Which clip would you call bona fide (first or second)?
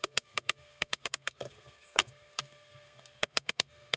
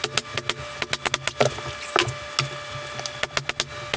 second